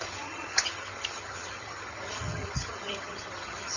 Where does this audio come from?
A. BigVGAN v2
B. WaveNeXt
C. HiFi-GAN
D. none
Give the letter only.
C